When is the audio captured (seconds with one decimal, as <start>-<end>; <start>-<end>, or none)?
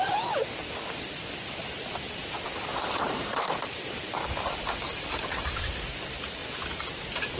0.0-2.2; 5.6-7.4